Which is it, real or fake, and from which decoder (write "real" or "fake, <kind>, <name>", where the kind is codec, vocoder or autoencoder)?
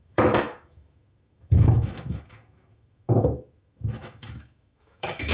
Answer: fake, autoencoder, DAC-VAE